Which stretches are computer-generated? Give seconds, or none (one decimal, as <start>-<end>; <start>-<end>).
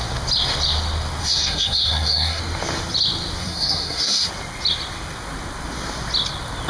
1.2-2.4; 3.4-4.3